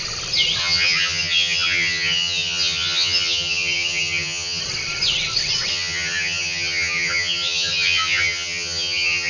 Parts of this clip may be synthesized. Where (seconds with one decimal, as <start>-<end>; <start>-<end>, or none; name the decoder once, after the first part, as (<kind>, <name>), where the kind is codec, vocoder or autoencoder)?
0.6-4.6 (vocoder, HiFi-GAN); 5.7-9.3